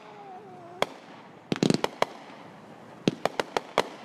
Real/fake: real